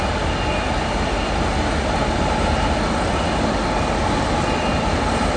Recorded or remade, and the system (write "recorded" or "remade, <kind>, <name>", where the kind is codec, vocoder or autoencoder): recorded